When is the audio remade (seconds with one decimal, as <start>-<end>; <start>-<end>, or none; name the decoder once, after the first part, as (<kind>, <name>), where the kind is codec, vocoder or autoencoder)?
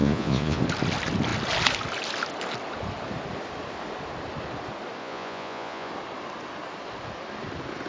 0.0-0.6 (vocoder, Vocos); 5.0-5.9